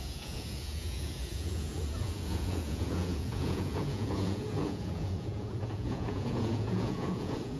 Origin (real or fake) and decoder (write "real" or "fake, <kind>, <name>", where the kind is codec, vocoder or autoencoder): fake, vocoder, Vocos